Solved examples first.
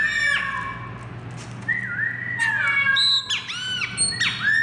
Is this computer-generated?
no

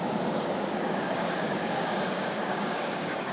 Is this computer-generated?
yes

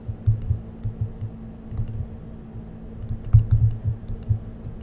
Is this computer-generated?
no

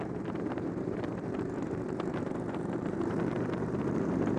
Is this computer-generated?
yes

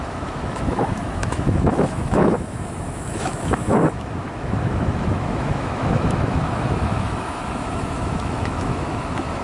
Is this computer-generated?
yes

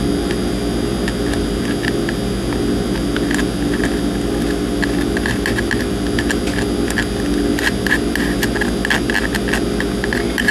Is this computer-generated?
no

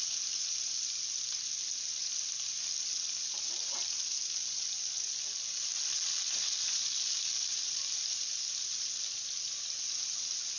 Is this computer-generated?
no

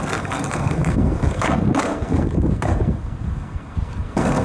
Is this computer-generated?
yes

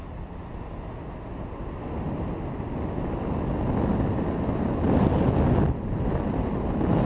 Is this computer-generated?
no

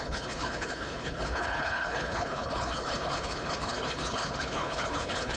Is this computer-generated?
yes